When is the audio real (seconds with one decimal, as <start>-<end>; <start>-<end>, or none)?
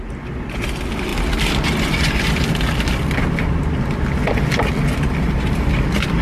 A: 0.0-6.2